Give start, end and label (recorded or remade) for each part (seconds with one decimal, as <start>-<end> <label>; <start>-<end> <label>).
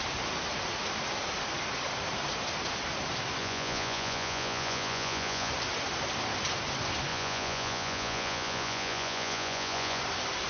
0.0-3.4 recorded; 3.4-5.5 remade; 5.5-7.1 recorded; 7.1-10.0 remade; 10.0-10.5 recorded